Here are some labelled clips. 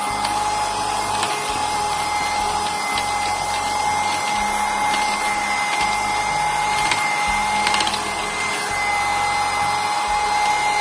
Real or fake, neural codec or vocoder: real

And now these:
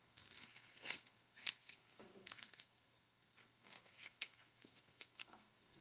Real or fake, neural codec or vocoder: fake, codec, SNAC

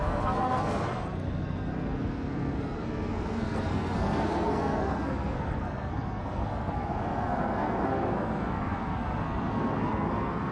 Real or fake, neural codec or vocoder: fake, codec, SNAC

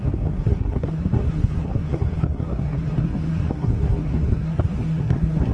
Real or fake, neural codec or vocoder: fake, codec, SNAC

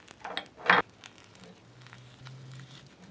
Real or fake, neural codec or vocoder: real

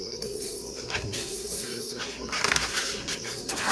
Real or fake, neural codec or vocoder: fake, codec, SNAC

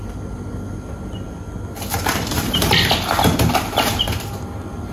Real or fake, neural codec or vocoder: real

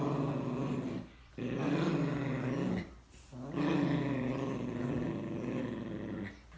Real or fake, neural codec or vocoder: real